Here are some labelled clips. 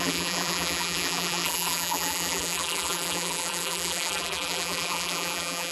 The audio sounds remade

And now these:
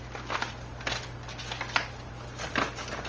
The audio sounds recorded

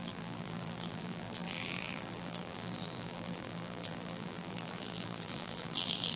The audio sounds remade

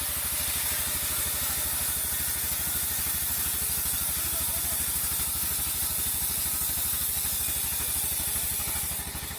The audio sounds recorded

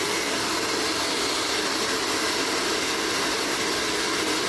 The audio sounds recorded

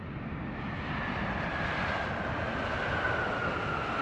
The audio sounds recorded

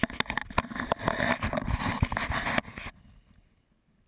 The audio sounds recorded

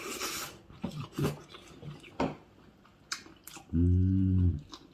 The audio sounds recorded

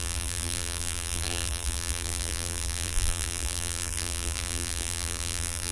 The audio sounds remade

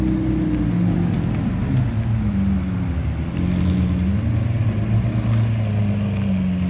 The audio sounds recorded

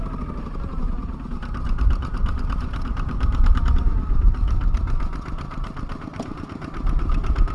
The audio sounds remade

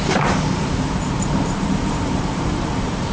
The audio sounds remade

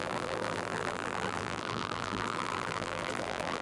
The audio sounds remade